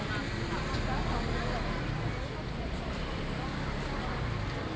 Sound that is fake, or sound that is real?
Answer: real